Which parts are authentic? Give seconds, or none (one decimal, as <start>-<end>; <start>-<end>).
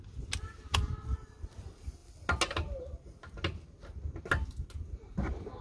0.0-5.6